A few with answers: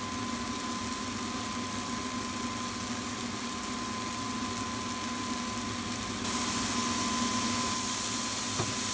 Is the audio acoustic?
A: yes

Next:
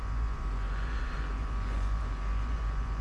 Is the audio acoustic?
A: no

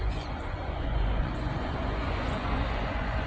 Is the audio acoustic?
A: no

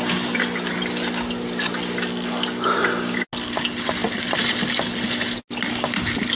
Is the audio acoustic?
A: yes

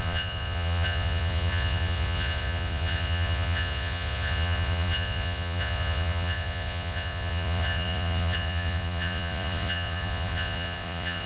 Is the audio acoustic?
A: no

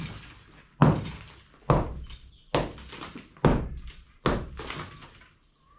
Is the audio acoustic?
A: yes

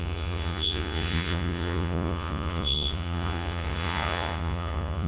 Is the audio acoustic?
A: no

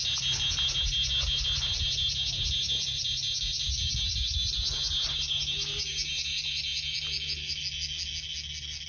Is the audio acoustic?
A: yes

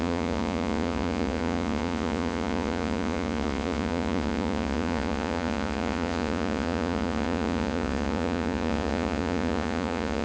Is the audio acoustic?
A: no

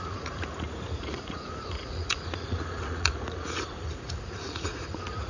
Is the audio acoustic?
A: no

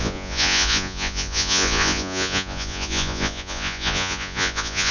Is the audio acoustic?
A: no